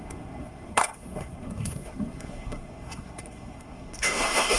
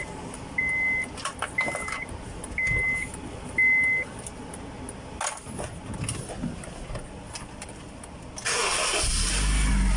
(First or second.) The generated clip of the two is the first